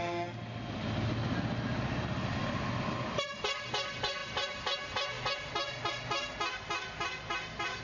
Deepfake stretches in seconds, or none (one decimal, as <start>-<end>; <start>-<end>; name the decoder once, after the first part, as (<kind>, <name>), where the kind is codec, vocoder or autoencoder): none